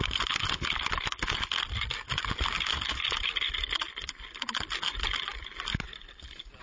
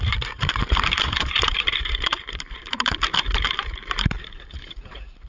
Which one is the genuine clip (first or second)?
first